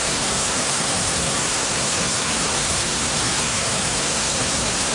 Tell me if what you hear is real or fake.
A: fake